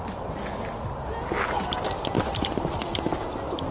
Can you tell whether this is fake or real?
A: real